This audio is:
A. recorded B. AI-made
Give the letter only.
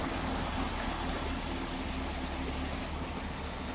A